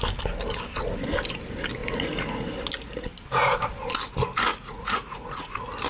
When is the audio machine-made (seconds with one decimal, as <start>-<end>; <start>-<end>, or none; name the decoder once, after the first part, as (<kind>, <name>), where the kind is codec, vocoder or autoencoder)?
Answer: 1.8-2.5 (vocoder, Vocos); 4.5-5.5